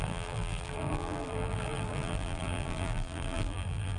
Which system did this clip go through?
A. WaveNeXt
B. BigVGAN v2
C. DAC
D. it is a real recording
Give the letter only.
B